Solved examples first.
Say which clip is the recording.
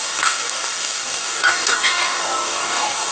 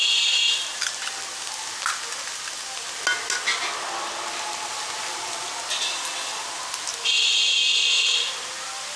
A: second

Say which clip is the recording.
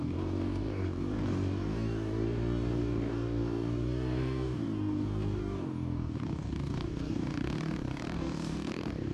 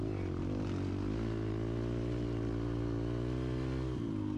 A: second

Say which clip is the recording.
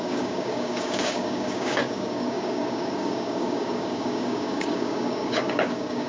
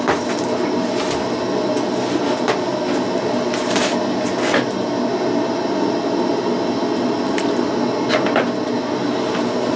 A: second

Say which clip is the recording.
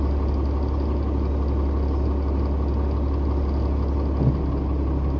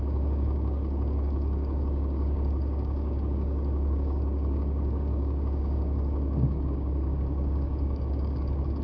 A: first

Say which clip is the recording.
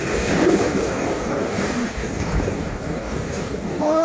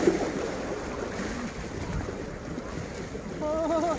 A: second